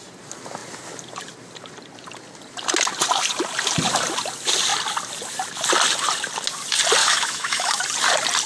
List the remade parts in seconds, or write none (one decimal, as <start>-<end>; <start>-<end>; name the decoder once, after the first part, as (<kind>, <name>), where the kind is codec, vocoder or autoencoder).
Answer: 7.0-7.8 (autoencoder, DAC-VAE)